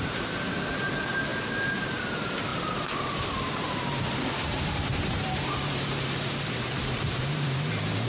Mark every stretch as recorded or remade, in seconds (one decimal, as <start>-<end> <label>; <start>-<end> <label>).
0.0-8.1 remade